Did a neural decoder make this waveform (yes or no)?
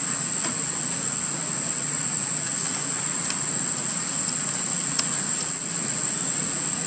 yes